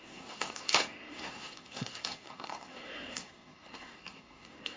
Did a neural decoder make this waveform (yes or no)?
yes